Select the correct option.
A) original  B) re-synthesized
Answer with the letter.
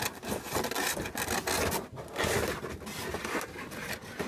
A